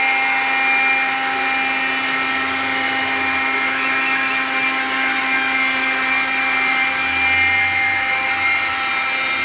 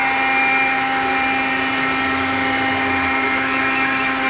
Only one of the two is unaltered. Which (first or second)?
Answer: first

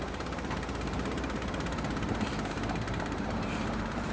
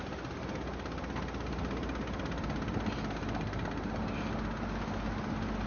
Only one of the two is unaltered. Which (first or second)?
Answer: second